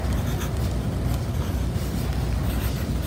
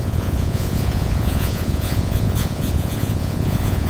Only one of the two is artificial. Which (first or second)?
second